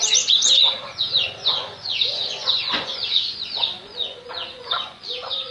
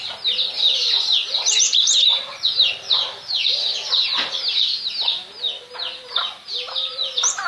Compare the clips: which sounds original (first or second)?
second